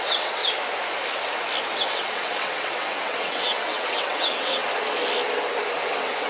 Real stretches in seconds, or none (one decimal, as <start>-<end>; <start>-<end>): 0.4-1.9; 4.6-5.8